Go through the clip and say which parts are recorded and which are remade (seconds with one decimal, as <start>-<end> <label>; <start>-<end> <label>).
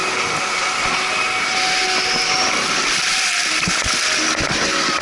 0.0-5.0 recorded